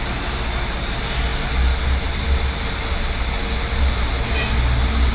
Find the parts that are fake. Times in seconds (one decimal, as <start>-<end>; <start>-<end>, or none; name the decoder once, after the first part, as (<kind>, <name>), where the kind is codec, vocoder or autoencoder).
none